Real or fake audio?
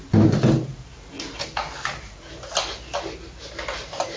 real